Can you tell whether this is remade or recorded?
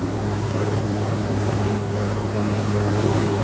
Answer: remade